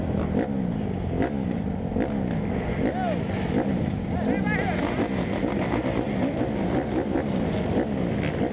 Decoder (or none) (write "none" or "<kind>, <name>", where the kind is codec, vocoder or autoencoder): none